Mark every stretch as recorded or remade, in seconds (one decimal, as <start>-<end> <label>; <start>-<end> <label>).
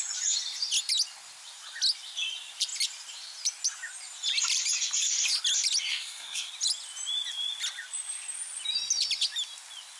0.0-5.9 recorded; 5.9-6.5 remade; 6.5-10.0 recorded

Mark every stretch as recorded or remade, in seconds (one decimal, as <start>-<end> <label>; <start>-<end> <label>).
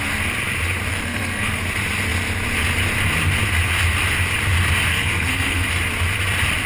0.0-0.9 recorded; 0.9-1.6 remade; 1.6-4.9 recorded; 4.9-5.8 remade; 5.8-6.7 recorded